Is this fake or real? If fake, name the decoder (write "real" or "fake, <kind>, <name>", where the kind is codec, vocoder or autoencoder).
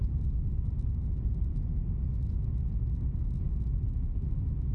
real